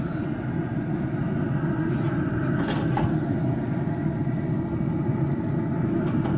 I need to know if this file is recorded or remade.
recorded